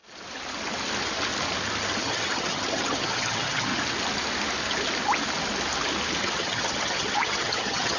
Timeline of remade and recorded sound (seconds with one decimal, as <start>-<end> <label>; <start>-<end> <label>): 0.0-2.0 recorded; 2.0-3.7 remade; 3.7-6.2 recorded; 6.2-8.0 remade